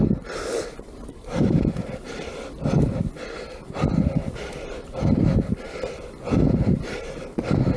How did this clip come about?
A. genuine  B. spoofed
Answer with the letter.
B